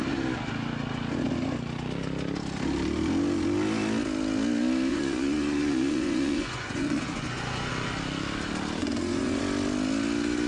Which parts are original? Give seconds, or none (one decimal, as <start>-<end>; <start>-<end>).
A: 0.0-4.9; 7.7-8.8; 9.4-10.5